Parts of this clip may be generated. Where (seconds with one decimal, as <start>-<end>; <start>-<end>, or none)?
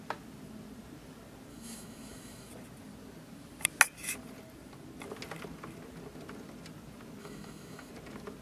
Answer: 1.5-2.5; 7.2-7.9